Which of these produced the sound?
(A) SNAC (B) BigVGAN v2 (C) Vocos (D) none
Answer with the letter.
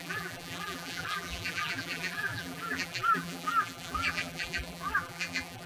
B